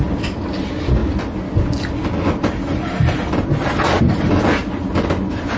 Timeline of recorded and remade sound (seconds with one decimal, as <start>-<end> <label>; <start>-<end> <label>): 0.0-5.6 recorded